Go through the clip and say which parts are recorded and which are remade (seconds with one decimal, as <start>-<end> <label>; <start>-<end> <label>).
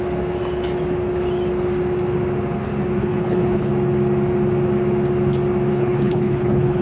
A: 0.0-3.0 recorded; 3.0-3.7 remade; 3.7-5.7 recorded; 5.7-6.8 remade